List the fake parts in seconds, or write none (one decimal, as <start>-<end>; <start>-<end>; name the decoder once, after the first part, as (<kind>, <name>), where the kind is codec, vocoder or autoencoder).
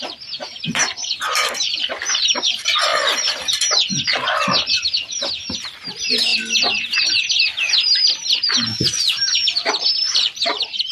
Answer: 0.0-1.7 (vocoder, BigVGAN v2); 2.4-2.9; 4.8-6.3; 9.3-10.9